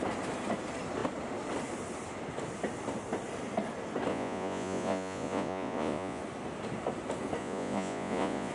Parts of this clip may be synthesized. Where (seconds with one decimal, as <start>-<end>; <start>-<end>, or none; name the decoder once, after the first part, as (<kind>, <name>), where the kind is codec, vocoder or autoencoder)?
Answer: 4.1-6.2 (vocoder, Vocos); 7.4-8.5